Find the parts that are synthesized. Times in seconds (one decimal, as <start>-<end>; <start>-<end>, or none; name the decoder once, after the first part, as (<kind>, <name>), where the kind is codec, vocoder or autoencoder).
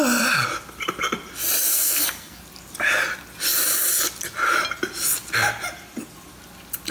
1.7-2.4 (codec, SNAC)